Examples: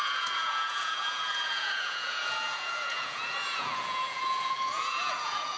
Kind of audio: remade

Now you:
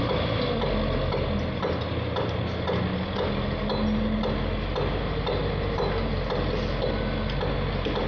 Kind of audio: recorded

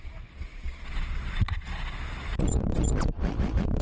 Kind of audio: remade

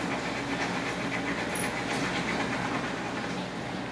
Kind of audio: recorded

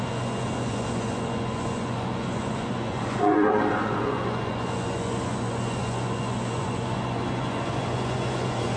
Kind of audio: remade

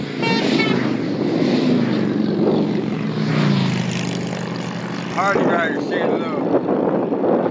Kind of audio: recorded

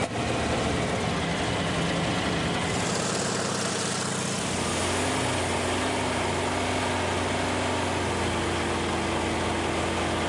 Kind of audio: recorded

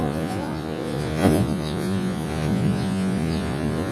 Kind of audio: remade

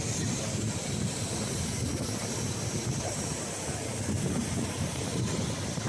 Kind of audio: recorded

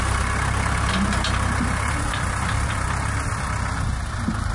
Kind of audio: recorded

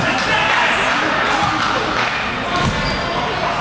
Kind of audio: recorded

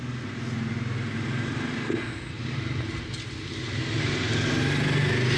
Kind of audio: recorded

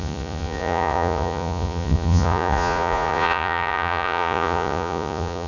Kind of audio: remade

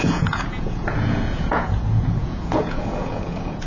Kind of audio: remade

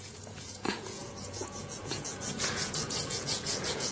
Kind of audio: remade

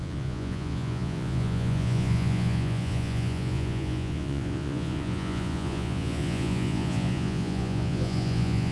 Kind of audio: remade